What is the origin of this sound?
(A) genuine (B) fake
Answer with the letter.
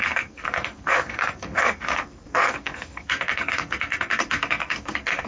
B